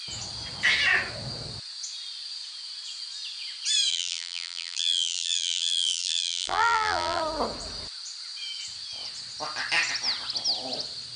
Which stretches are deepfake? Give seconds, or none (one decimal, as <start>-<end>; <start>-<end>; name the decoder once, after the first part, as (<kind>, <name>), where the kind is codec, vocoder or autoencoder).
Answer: 3.9-7.2 (vocoder, BigVGAN v2)